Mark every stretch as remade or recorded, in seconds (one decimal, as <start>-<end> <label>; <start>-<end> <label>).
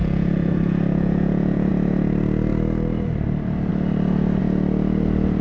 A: 0.0-1.7 remade; 1.7-5.4 recorded